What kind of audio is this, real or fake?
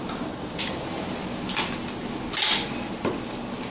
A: real